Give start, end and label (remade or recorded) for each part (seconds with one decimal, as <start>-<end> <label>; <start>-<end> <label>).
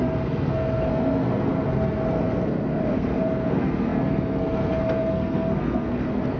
0.0-6.4 remade